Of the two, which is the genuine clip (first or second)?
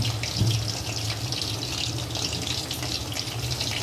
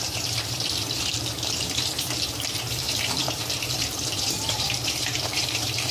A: first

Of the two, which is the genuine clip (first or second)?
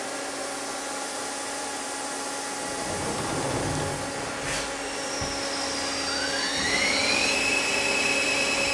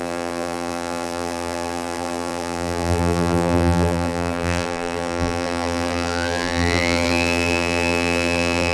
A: first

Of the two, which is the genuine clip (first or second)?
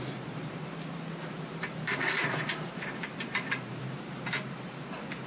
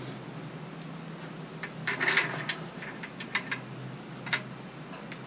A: second